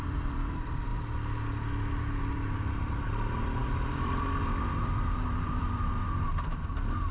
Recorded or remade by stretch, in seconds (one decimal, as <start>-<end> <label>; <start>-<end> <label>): 0.0-0.9 remade; 0.9-2.3 recorded; 2.3-7.1 remade

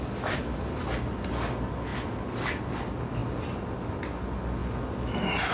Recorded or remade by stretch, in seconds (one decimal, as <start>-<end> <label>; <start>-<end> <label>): 0.0-5.5 recorded

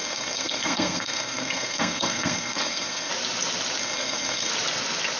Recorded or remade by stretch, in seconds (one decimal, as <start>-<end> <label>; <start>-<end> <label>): 0.0-3.1 remade; 3.1-3.8 recorded; 3.8-4.5 remade; 4.5-5.2 recorded

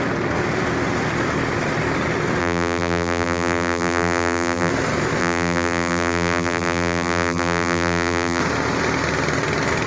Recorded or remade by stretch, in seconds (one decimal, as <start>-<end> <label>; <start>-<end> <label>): 0.0-2.4 recorded; 2.4-4.7 remade; 4.7-5.2 recorded; 5.2-8.4 remade; 8.4-9.9 recorded